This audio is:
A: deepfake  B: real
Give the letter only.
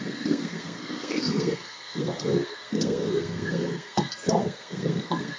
A